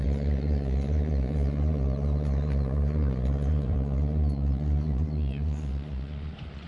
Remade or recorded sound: remade